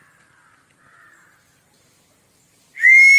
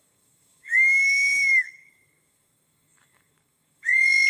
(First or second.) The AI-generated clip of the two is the second